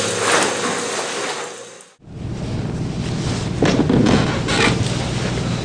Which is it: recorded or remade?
recorded